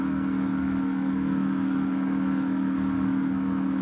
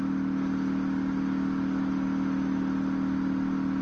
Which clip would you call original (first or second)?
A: second